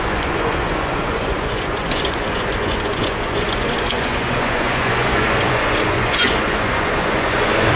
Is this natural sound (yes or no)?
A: no